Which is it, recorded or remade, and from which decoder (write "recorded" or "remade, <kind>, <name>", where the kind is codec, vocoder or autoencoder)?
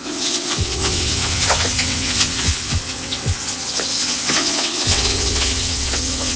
remade, vocoder, WaveNeXt